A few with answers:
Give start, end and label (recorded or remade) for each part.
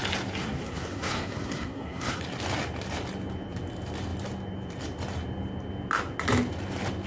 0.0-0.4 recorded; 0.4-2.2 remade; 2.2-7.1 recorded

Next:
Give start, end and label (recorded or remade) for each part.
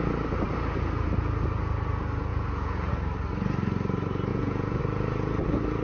0.0-2.3 recorded; 2.3-2.9 remade; 2.9-4.3 recorded; 4.3-4.8 remade; 4.8-5.8 recorded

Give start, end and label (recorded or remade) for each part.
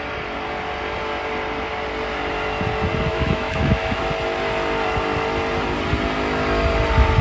0.0-3.1 recorded; 3.1-4.0 remade; 4.0-7.2 recorded